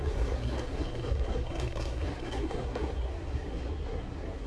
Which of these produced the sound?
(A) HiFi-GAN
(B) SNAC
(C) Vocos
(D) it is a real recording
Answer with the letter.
B